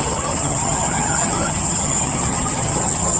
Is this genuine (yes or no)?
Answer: no